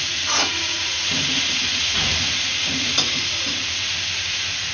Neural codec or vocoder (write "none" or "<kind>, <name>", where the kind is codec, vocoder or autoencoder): vocoder, Vocos